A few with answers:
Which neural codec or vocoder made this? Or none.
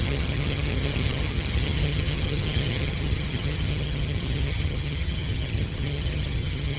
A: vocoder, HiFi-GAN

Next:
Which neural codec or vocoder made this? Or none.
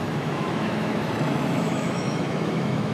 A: autoencoder, DAC-VAE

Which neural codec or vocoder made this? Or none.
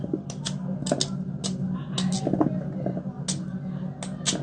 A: none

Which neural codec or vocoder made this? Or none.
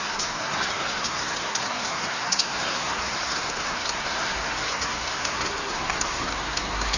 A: codec, SNAC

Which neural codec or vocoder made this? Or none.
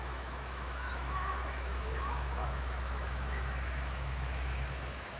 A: autoencoder, DAC-VAE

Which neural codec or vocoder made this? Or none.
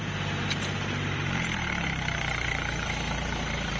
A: vocoder, BigVGAN v2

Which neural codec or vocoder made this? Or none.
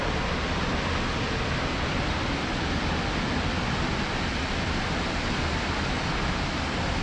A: none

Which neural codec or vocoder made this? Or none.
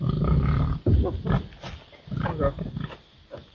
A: none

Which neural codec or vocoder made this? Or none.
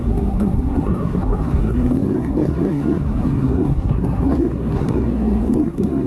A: codec, SNAC